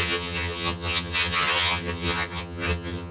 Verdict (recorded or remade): remade